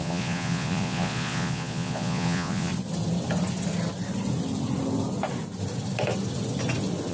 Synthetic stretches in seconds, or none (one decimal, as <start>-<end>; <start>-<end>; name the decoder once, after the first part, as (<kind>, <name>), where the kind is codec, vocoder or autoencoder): 0.0-2.7 (vocoder, Vocos)